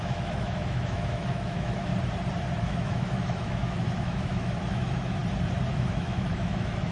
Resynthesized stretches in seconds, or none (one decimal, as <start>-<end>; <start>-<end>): 0.0-1.9; 2.6-5.2; 5.7-6.9